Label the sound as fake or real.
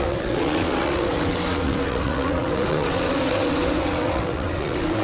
fake